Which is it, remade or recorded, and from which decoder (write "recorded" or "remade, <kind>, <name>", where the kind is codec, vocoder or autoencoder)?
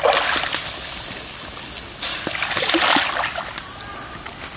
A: recorded